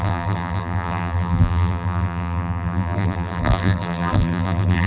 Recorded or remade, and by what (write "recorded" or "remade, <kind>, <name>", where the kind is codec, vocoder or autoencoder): remade, vocoder, BigVGAN v2